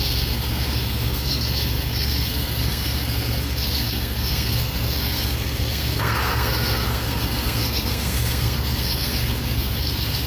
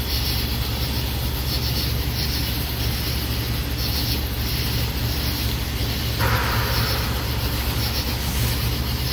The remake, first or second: first